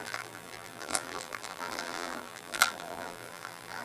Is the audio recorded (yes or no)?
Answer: no